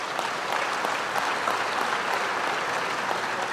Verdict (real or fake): real